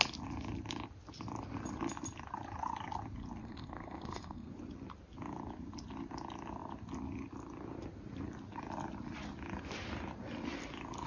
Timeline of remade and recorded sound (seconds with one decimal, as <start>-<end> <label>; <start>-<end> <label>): 0.0-3.4 recorded; 3.4-4.5 remade; 4.5-11.1 recorded